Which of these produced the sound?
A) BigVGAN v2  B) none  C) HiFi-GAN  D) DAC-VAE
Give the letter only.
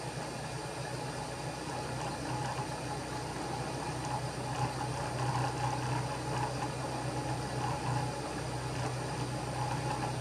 B